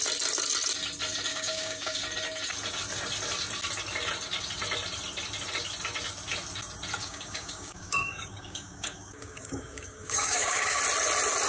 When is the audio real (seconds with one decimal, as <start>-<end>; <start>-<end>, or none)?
0.0-1.3; 2.0-7.0; 10.8-11.5